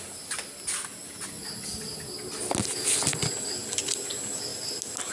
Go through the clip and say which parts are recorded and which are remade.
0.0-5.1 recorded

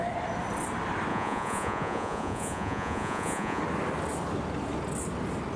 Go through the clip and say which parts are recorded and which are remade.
0.0-1.1 recorded; 1.1-3.6 remade; 3.6-5.6 recorded

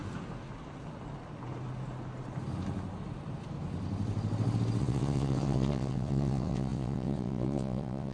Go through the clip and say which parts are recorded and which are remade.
0.0-4.8 recorded; 4.8-8.1 remade

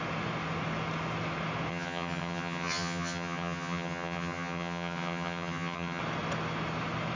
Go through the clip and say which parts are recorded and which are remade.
0.0-1.7 recorded; 1.7-6.0 remade; 6.0-7.2 recorded

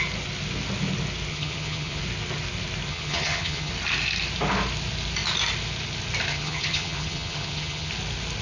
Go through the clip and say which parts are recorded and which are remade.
0.0-1.3 recorded; 1.3-2.0 remade; 2.0-2.9 recorded; 2.9-3.7 remade; 3.7-6.3 recorded; 6.3-7.9 remade; 7.9-8.4 recorded